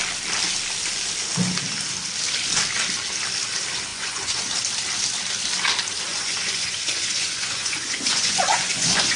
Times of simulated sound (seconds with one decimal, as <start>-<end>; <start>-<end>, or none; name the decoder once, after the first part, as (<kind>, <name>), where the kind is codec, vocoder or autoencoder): 3.9-4.5 (vocoder, Vocos); 6.1-9.2